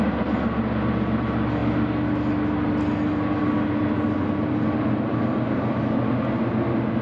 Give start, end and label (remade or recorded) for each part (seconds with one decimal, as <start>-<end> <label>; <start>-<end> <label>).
0.0-7.0 recorded

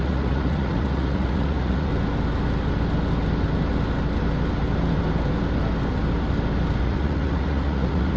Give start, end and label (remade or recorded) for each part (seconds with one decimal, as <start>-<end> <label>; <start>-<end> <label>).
0.0-1.9 remade; 1.9-6.8 recorded; 6.8-8.2 remade

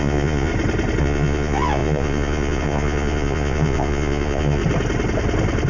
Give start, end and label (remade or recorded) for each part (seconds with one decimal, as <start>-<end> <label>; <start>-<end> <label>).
0.0-0.5 remade; 0.5-1.0 recorded; 1.0-4.6 remade; 4.6-5.7 recorded

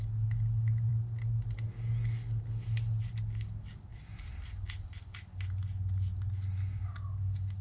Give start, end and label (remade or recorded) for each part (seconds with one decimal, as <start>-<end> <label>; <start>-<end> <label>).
0.0-7.6 recorded

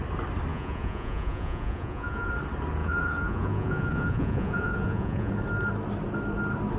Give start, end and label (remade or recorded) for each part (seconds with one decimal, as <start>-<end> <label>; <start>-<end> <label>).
0.0-0.5 recorded; 0.5-2.3 remade; 2.3-2.8 recorded; 2.8-5.3 remade; 5.3-6.8 recorded

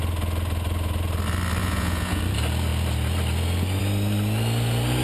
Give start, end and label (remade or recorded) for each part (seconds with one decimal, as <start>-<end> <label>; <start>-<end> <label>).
0.0-1.6 recorded; 1.6-2.2 remade; 2.2-5.0 recorded

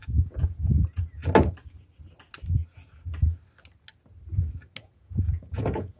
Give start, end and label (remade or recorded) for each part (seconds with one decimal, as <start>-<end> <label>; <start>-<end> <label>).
0.0-1.2 remade; 1.2-4.8 recorded; 4.8-6.0 remade

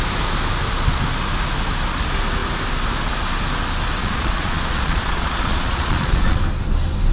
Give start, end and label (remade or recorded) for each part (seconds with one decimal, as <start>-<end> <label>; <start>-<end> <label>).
0.0-4.0 recorded; 4.0-6.4 remade; 6.4-7.1 recorded